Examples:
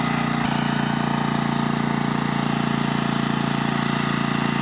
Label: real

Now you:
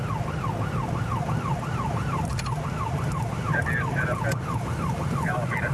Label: real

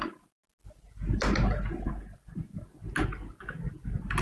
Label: real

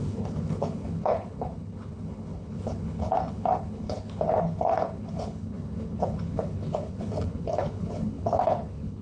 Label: fake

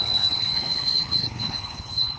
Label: fake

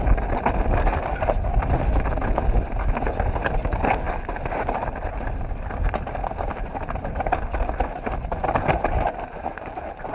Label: real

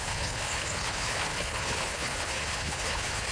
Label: fake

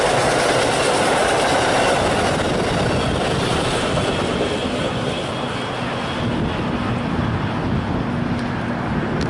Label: real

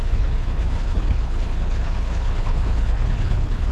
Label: fake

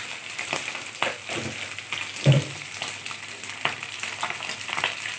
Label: real